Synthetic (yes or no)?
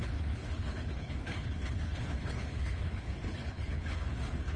yes